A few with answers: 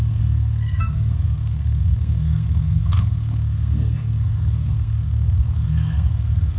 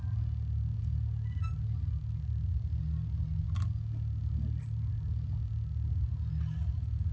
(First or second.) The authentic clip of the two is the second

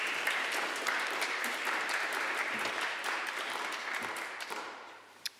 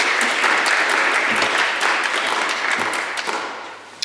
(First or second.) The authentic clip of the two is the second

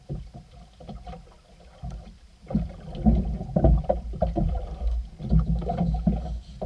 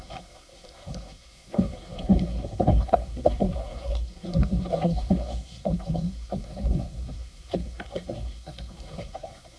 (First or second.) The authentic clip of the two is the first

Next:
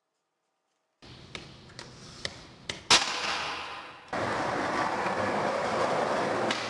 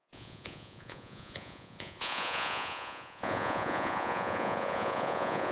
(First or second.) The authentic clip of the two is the first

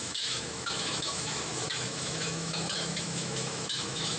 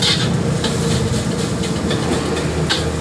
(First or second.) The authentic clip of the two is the second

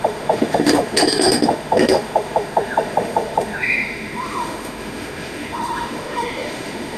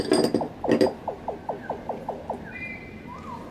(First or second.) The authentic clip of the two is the second